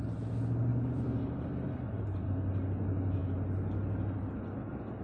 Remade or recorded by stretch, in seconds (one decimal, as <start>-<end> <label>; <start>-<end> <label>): 0.0-0.7 recorded; 0.7-2.3 remade; 2.3-5.0 recorded